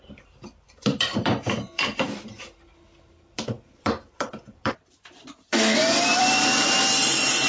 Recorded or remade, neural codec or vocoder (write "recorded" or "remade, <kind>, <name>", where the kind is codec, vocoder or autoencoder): remade, vocoder, BigVGAN v2